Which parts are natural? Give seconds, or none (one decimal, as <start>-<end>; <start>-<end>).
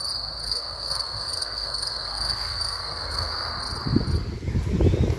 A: 0.0-0.4; 3.5-5.2